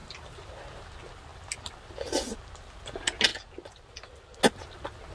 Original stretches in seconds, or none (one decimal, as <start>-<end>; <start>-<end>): 0.0-5.1